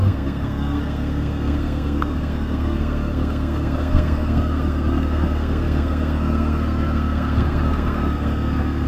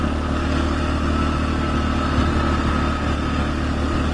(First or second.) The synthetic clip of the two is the first